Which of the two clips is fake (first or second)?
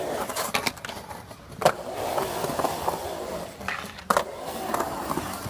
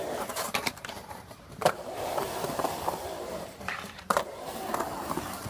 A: second